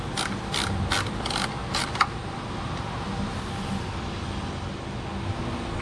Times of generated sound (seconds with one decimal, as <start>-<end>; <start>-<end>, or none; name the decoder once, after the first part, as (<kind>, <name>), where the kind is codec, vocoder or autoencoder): 1.6-3.4 (vocoder, BigVGAN v2)